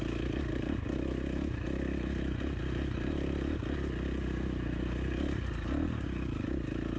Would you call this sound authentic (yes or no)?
yes